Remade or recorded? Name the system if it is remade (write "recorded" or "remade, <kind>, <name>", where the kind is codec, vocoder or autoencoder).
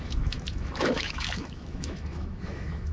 remade, autoencoder, DAC-VAE